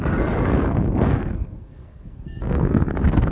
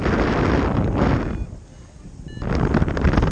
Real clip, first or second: second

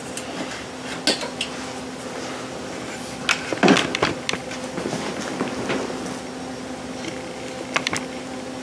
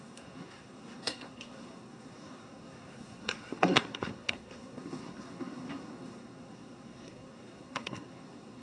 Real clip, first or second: first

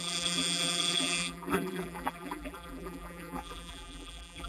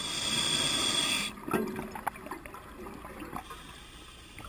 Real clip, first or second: second